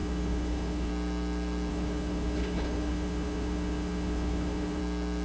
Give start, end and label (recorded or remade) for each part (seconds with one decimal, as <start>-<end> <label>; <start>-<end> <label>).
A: 0.0-0.9 remade; 0.9-1.7 recorded; 1.7-4.8 remade; 4.8-5.2 recorded